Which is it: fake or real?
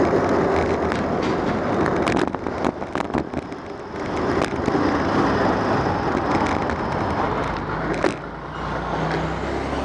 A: real